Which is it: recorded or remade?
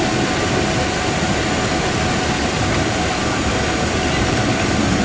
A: recorded